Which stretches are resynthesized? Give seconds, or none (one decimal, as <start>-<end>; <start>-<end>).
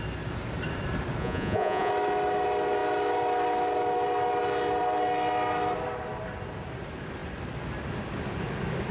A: 1.2-1.9